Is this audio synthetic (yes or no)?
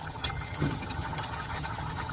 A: yes